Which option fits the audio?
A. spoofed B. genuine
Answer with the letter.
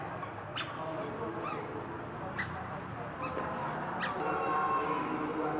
B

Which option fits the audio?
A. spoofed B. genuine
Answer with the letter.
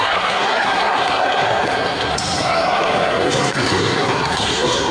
A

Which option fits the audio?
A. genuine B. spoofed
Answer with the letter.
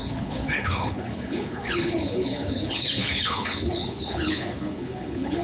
B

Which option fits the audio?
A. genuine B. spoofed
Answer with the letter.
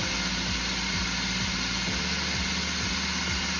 A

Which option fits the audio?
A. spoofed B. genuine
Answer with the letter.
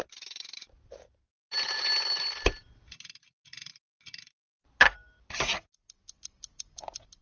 B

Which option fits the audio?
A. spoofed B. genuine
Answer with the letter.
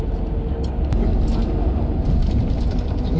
B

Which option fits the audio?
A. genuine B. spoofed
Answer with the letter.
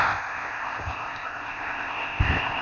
B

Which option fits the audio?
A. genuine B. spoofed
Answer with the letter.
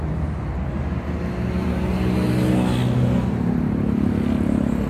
A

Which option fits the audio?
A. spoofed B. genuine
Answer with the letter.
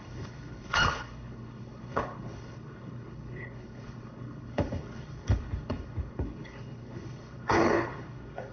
A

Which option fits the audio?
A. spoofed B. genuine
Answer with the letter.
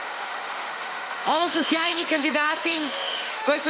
A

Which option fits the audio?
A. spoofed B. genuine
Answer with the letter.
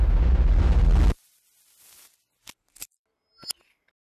B